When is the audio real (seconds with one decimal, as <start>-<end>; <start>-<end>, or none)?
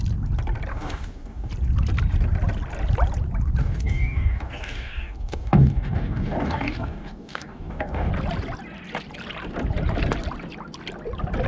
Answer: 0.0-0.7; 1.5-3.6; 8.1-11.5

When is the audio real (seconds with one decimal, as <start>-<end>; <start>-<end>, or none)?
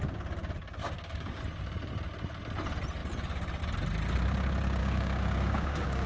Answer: 0.0-0.8; 1.4-4.8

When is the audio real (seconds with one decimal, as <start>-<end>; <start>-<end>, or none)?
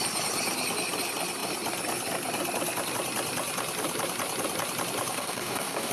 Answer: 0.0-5.1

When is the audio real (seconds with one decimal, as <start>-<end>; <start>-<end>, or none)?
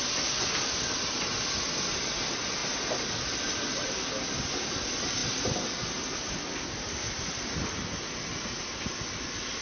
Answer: 0.0-9.6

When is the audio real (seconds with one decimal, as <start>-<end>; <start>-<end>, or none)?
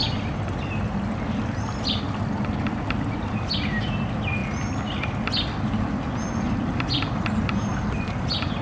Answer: 0.0-8.6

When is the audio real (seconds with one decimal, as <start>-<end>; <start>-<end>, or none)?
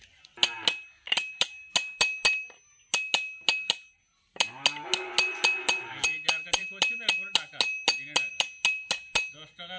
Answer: 0.0-9.8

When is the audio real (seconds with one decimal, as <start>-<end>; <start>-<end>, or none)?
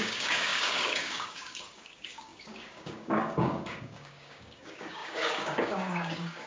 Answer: none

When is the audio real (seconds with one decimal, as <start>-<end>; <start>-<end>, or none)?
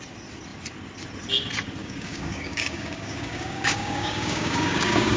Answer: 0.0-1.8